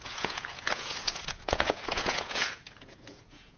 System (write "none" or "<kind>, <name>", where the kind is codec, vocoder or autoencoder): vocoder, Vocos